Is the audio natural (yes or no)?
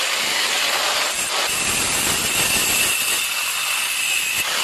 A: yes